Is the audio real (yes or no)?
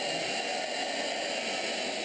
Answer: yes